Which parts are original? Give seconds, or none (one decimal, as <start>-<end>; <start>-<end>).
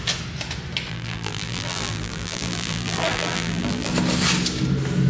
0.0-0.9; 3.9-5.1